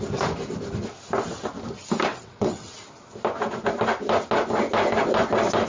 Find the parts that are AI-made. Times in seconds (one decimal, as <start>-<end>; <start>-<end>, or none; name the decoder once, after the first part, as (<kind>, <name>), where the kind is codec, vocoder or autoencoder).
2.1-2.8 (vocoder, WaveNeXt)